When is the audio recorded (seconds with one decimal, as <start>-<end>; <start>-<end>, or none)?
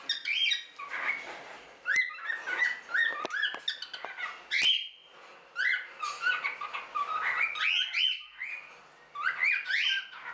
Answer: 0.0-10.3